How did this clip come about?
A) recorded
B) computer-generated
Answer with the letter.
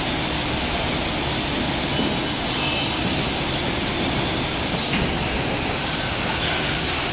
A